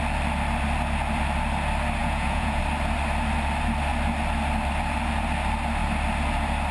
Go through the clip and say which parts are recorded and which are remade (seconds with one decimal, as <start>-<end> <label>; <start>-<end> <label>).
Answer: 0.0-2.0 recorded; 2.0-2.6 remade; 2.6-6.7 recorded

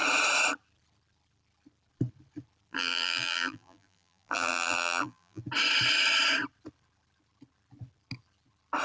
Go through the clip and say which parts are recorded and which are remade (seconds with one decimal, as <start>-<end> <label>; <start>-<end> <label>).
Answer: 0.0-2.7 recorded; 2.7-5.4 remade; 5.4-8.8 recorded

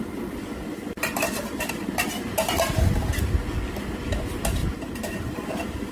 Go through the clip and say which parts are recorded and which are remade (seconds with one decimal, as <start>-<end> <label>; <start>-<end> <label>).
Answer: 0.0-5.9 recorded

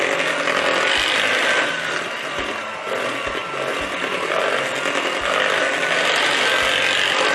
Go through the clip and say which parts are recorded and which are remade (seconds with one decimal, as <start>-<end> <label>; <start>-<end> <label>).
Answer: 0.0-3.4 recorded; 3.4-4.4 remade; 4.4-7.3 recorded

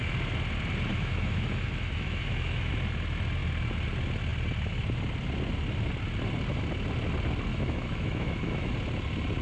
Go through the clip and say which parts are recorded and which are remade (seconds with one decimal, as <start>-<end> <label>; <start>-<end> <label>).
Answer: 0.0-0.9 recorded; 0.9-2.7 remade; 2.7-7.5 recorded; 7.5-8.7 remade; 8.7-9.4 recorded

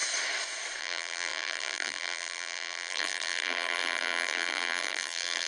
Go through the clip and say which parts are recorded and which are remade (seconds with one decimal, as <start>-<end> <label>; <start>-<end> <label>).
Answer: 0.0-0.8 recorded; 0.8-5.5 remade

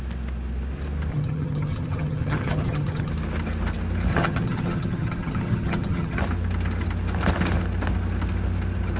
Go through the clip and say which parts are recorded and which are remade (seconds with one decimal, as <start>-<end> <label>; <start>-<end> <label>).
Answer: 0.0-1.1 recorded; 1.1-3.1 remade; 3.1-4.1 recorded; 4.1-6.2 remade; 6.2-9.0 recorded

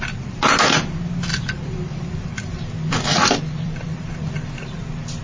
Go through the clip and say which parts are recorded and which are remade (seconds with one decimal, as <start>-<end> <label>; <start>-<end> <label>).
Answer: 0.0-1.3 recorded; 1.3-4.1 remade; 4.1-5.2 recorded